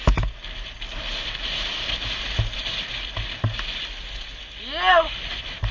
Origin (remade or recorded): recorded